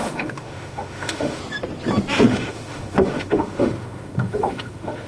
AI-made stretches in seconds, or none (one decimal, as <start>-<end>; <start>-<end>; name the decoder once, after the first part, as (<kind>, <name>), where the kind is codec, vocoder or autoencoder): 0.0-1.4 (autoencoder, DAC-VAE); 2.3-5.1